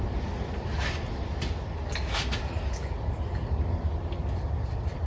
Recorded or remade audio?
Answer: recorded